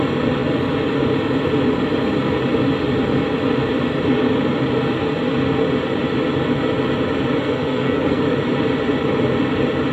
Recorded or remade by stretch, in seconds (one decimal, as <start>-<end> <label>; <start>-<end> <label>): 0.0-7.4 recorded; 7.4-8.2 remade; 8.2-9.9 recorded